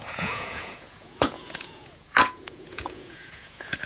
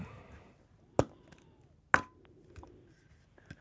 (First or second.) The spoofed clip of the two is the first